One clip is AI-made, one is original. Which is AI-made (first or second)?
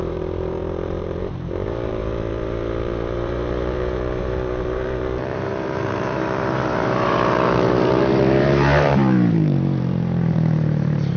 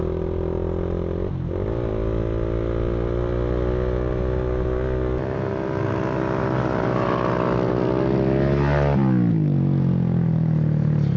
first